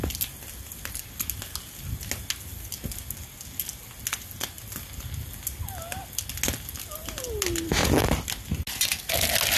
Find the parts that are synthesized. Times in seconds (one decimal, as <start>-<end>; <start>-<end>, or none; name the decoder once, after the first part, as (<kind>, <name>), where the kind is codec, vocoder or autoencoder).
none